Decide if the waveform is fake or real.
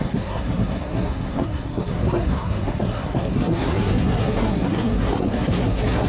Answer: fake